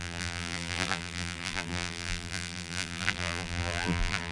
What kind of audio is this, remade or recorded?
remade